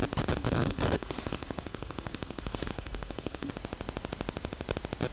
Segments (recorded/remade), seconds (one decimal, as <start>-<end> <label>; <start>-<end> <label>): 0.0-0.4 recorded; 0.4-3.5 remade; 3.5-5.1 recorded